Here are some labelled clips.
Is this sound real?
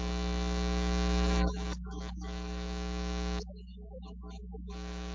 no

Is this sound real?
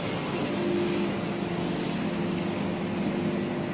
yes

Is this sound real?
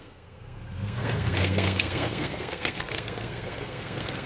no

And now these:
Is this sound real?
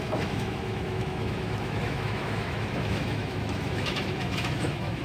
no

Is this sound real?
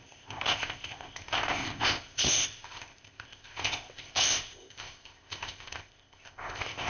no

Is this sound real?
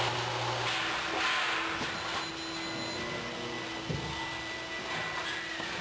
yes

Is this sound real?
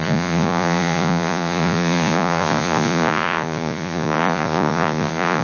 no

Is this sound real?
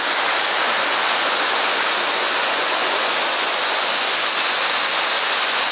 no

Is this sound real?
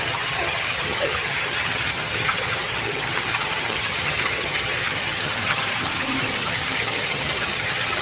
no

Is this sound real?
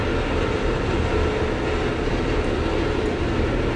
yes